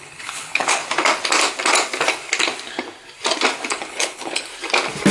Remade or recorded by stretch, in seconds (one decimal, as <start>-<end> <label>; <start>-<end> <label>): 0.0-0.8 remade; 0.8-3.7 recorded; 3.7-4.5 remade; 4.5-5.1 recorded